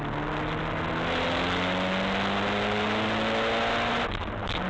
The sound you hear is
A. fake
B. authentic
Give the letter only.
B